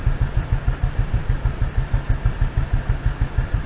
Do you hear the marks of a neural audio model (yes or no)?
yes